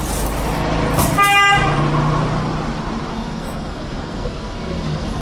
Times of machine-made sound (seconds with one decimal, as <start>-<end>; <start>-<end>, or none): 3.1-5.2